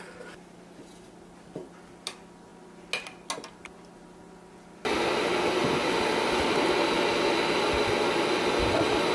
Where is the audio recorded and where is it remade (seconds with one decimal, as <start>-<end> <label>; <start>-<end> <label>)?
0.0-9.1 recorded

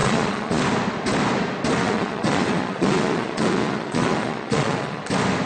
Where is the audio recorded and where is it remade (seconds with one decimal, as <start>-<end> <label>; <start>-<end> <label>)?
0.0-0.6 remade; 0.6-1.8 recorded; 1.8-5.0 remade; 5.0-5.4 recorded